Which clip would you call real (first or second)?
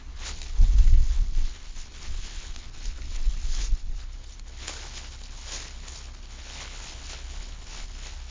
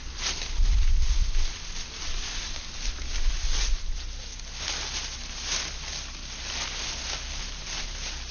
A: second